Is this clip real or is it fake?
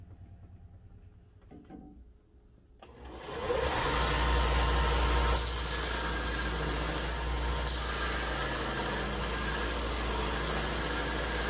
real